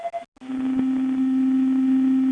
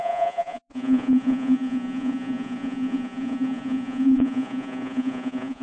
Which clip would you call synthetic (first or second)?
second